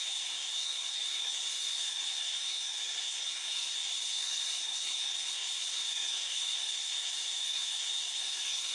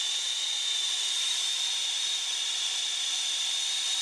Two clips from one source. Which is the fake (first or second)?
first